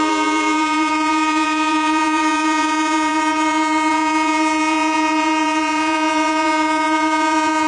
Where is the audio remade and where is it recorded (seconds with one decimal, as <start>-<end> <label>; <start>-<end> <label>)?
0.0-7.7 remade